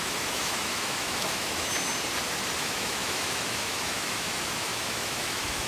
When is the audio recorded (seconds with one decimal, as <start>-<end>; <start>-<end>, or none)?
1.7-2.6